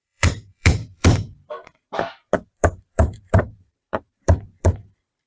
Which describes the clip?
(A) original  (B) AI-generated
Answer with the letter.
B